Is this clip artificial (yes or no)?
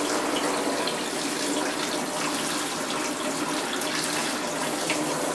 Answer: no